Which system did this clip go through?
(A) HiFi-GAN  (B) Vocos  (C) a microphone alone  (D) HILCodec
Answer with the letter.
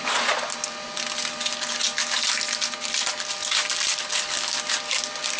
C